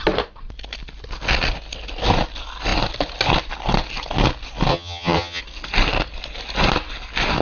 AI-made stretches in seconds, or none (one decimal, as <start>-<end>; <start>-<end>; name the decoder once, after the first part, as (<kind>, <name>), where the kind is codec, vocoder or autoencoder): 4.7-5.4 (vocoder, HiFi-GAN)